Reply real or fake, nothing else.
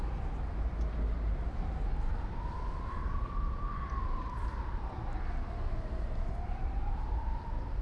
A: real